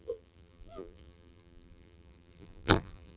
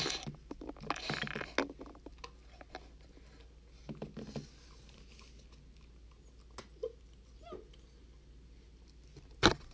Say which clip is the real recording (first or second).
second